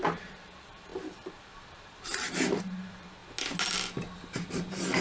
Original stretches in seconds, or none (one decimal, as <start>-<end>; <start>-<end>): 3.2-4.1